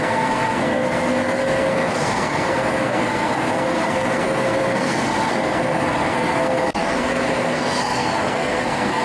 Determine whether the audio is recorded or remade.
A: remade